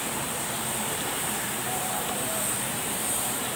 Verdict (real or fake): fake